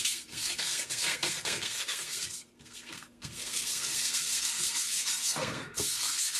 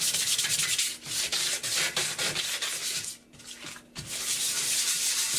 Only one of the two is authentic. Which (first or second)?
second